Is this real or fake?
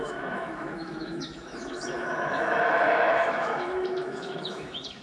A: fake